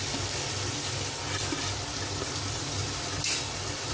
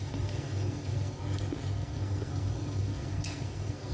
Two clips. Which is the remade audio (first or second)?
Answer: second